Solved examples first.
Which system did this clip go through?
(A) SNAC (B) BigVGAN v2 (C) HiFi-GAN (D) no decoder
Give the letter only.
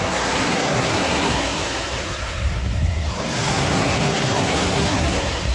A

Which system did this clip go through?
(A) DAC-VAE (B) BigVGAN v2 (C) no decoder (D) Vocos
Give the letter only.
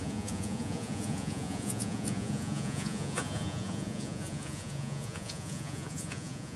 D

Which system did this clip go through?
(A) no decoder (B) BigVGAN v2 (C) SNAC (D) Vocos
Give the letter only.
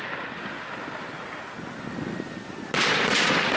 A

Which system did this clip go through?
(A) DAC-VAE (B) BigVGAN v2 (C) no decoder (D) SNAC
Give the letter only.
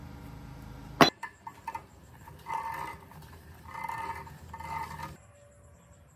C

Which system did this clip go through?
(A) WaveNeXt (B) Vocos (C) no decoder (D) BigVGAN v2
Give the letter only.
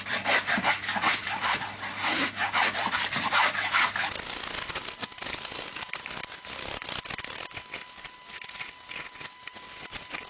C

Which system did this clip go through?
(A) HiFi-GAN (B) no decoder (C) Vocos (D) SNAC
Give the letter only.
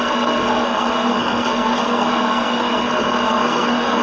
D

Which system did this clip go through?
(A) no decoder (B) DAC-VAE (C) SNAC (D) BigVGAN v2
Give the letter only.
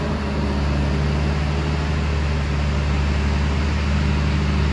A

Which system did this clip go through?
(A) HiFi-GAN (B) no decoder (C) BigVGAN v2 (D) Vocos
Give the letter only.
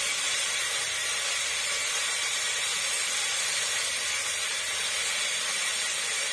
C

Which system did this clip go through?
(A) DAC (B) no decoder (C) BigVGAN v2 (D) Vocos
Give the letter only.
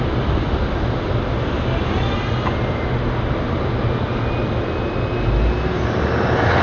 B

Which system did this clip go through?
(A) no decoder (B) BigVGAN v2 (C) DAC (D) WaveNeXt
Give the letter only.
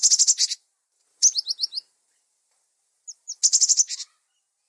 A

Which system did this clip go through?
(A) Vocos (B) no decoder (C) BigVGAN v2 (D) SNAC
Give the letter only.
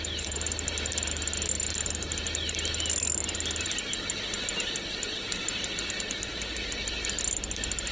B